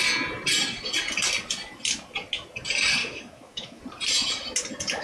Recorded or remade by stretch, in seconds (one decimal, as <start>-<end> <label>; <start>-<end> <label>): 0.0-3.0 recorded; 3.0-3.8 remade; 3.8-5.0 recorded